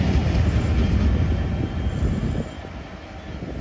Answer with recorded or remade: recorded